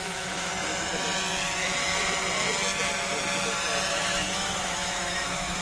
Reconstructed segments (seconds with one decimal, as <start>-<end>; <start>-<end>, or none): 0.0-0.5; 3.9-5.6